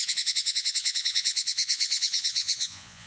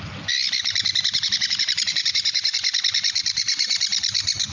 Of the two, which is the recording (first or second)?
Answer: second